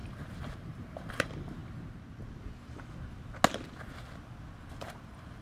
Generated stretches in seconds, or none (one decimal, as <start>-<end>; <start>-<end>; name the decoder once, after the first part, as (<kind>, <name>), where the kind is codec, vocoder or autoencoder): 0.0-1.6 (vocoder, BigVGAN v2); 4.8-5.4

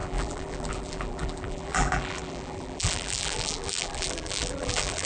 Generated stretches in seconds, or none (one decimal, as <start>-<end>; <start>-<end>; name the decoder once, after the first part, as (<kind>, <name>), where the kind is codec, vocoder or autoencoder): 0.0-5.1 (vocoder, BigVGAN v2)